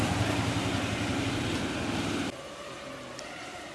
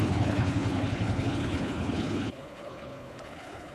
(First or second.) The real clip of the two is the first